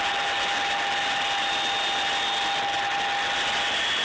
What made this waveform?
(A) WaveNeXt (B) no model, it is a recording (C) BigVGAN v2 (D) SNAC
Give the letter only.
B